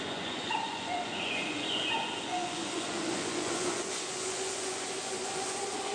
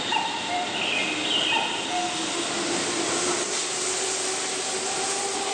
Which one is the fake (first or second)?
first